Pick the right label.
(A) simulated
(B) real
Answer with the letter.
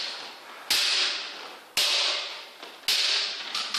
B